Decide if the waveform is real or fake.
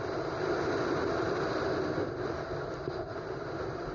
real